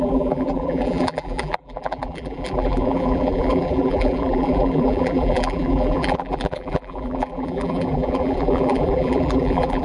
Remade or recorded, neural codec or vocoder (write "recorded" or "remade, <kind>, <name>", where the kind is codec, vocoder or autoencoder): remade, vocoder, BigVGAN v2